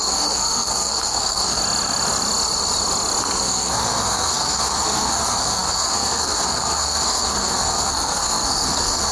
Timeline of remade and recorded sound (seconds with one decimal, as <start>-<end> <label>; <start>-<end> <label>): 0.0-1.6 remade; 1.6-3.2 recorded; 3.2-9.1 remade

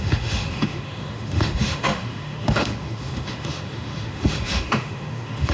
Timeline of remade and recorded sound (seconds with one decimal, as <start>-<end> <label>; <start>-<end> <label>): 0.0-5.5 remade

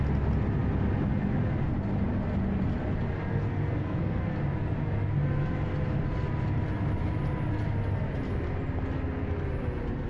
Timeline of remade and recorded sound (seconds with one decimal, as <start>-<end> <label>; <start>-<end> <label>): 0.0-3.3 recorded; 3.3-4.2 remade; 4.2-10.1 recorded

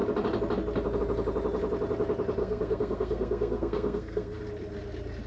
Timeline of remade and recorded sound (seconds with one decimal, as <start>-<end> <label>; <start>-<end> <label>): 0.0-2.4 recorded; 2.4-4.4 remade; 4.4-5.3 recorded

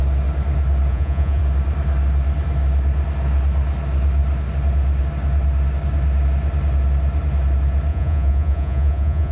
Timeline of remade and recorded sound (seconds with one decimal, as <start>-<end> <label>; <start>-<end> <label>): 0.0-0.9 recorded; 0.9-1.4 remade; 1.4-7.9 recorded; 7.9-9.3 remade

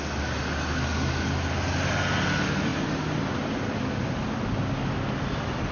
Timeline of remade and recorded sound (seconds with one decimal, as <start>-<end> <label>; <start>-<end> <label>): 0.0-5.7 recorded